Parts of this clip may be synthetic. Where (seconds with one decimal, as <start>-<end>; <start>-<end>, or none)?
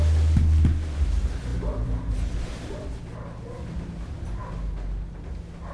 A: 1.5-3.0